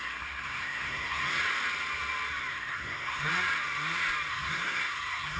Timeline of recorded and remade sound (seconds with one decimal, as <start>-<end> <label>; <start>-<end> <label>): 0.0-1.4 remade; 1.4-2.5 recorded; 2.5-3.3 remade; 3.3-4.3 recorded; 4.3-5.4 remade

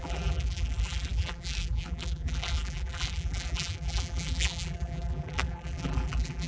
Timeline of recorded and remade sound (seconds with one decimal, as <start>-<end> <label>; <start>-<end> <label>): 0.0-6.5 remade